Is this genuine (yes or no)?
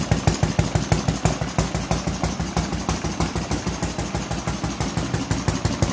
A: yes